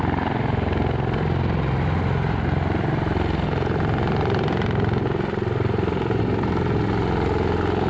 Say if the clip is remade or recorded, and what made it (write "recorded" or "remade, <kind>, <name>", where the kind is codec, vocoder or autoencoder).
recorded